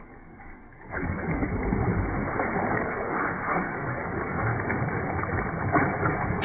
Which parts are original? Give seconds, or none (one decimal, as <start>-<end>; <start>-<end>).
1.4-2.7; 4.5-6.0